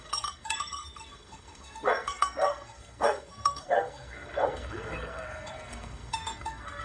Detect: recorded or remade remade